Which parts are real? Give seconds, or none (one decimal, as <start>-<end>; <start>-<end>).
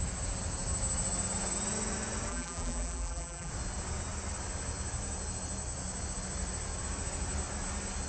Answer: 0.0-2.3; 3.5-8.1